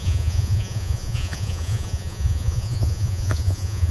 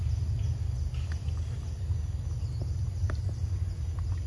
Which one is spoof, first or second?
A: first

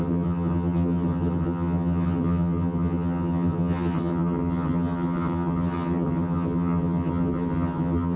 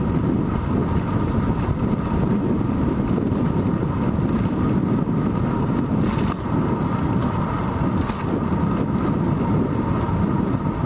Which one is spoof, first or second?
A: first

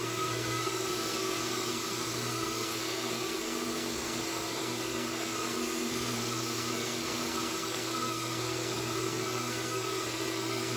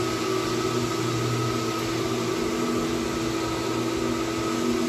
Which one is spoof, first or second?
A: first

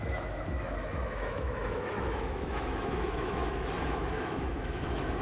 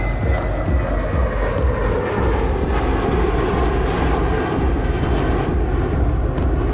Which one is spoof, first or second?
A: first